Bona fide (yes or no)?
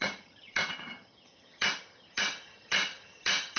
no